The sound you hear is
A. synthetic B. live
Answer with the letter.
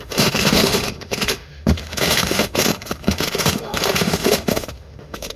A